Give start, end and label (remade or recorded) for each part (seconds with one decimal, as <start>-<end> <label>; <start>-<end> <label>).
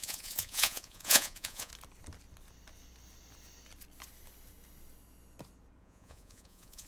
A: 0.0-1.7 remade; 1.7-5.8 recorded; 5.8-6.9 remade